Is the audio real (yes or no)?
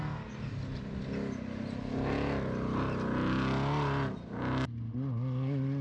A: yes